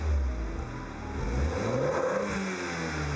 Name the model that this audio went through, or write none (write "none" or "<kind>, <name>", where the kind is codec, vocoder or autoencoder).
none